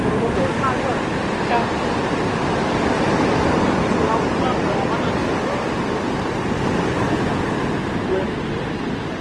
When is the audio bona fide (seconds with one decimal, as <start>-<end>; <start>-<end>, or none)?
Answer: 0.0-9.2